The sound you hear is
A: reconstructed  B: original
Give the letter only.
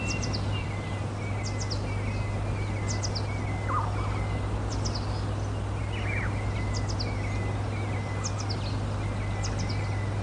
B